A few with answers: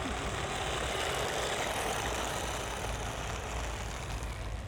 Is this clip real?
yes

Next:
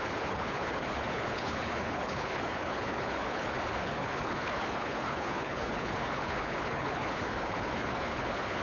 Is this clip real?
no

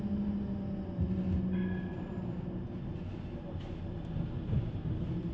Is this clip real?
yes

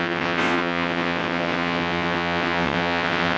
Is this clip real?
no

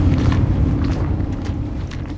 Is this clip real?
no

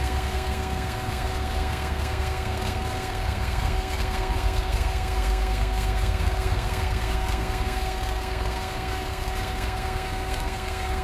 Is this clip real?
no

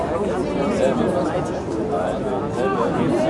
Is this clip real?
yes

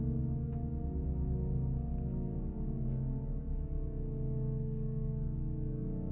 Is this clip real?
yes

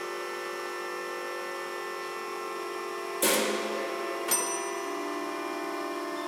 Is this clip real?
yes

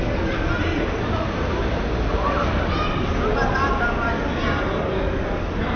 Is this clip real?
yes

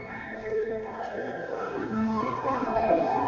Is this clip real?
no